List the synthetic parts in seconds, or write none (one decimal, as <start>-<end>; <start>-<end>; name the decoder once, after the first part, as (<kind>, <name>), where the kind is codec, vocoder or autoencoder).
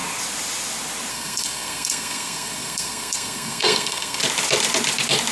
1.1-4.2 (codec, SNAC)